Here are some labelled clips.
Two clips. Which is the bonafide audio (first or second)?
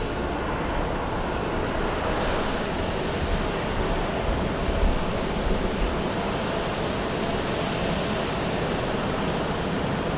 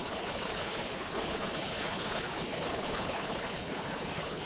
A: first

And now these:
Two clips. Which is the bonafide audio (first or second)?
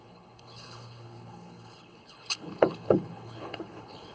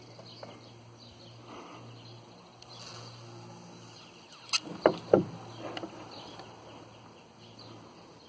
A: second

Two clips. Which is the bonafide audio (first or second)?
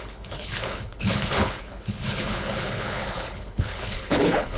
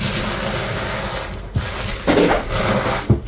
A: second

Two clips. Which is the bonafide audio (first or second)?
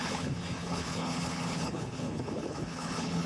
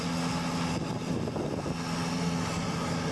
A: second